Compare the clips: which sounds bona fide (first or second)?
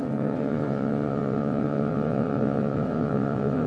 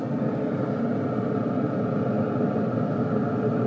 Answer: second